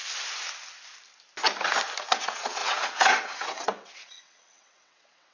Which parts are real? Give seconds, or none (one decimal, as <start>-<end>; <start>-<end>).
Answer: 0.0-2.0